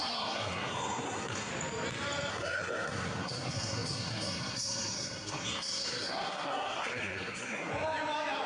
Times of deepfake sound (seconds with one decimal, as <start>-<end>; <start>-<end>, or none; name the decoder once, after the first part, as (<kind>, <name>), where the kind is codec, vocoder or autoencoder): 0.0-1.5 (codec, SNAC); 2.3-7.7